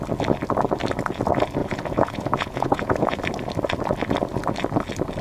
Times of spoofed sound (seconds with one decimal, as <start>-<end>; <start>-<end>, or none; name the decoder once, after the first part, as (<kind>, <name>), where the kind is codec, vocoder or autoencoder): 1.6-3.2 (vocoder, Vocos)